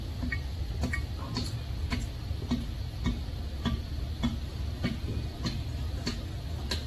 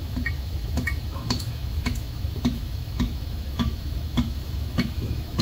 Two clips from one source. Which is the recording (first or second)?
first